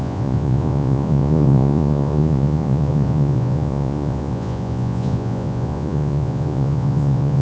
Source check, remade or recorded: remade